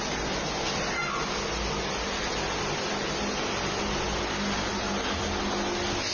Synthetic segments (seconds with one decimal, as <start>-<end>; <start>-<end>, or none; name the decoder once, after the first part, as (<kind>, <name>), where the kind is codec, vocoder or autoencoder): none